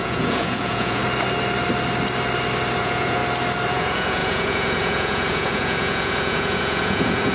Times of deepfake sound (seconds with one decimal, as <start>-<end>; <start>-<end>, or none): 0.0-1.0; 2.8-3.2; 3.7-7.3